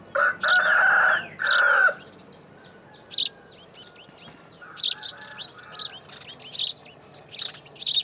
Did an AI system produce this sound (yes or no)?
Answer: no